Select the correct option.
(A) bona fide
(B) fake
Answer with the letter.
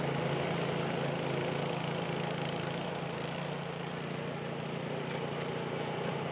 A